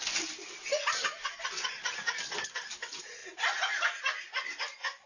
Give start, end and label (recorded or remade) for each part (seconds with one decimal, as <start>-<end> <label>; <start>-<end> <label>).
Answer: 0.0-5.1 recorded